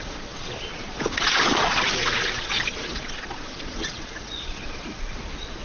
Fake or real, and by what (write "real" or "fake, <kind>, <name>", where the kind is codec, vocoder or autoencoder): fake, vocoder, Vocos